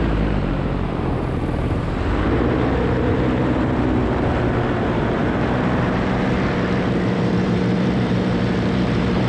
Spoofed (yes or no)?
yes